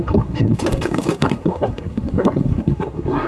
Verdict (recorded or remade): remade